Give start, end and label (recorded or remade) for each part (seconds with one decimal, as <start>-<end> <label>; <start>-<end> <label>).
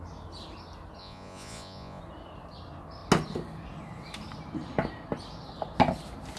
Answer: 0.0-1.0 recorded; 1.0-2.0 remade; 2.0-6.4 recorded